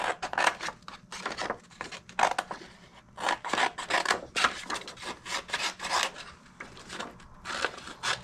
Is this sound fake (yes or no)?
no